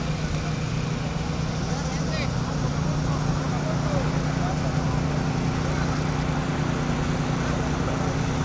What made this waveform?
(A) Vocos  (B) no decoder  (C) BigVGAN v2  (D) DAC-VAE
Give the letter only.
B